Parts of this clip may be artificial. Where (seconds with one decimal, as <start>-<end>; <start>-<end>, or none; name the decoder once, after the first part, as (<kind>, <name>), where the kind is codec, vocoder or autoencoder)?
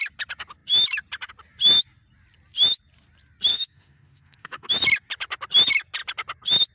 3.5-4.7 (autoencoder, DAC-VAE)